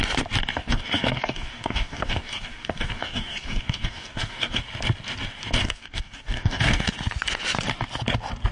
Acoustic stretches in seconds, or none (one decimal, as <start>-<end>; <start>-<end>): 0.0-0.6; 4.6-5.6; 6.9-8.5